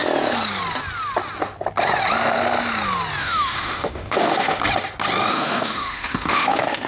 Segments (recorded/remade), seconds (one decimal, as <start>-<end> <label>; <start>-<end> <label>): 0.0-3.2 recorded; 3.2-4.6 remade; 4.6-5.3 recorded; 5.3-6.9 remade